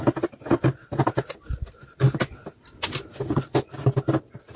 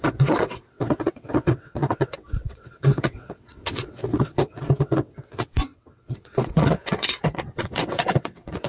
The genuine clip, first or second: first